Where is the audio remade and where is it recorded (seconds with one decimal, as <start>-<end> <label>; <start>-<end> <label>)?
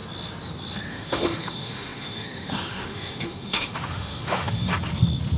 0.0-0.9 recorded; 0.9-4.7 remade; 4.7-5.4 recorded